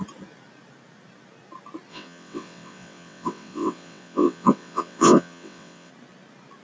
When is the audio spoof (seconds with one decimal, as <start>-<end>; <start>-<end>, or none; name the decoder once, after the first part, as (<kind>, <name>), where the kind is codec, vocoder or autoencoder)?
1.9-5.9 (vocoder, WaveNeXt)